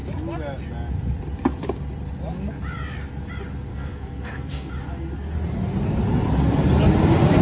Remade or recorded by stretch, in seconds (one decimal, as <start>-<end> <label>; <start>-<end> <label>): 0.0-3.7 recorded; 3.7-4.7 remade; 4.7-7.4 recorded